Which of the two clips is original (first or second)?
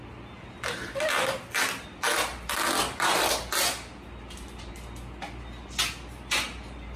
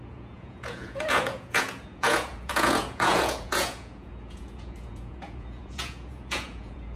first